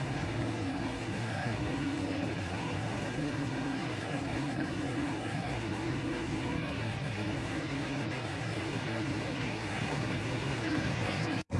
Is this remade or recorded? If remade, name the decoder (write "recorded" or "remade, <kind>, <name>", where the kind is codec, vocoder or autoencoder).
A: remade, codec, SNAC